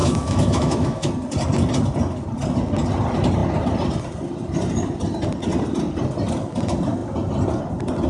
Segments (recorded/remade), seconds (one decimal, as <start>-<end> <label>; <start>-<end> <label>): 0.0-1.1 remade; 1.1-8.1 recorded